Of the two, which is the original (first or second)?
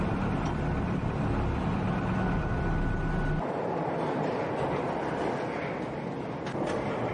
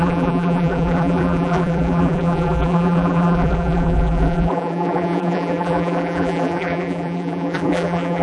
first